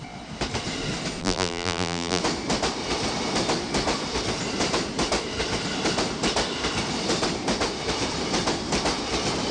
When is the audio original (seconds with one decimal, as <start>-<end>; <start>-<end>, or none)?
0.0-1.2; 2.2-9.5